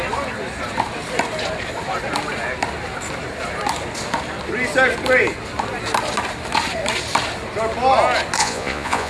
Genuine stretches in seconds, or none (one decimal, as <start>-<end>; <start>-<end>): 0.0-8.4